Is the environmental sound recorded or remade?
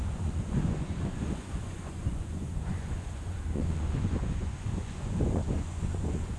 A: remade